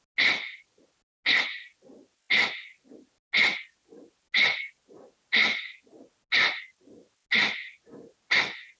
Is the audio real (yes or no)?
yes